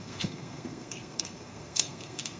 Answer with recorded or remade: remade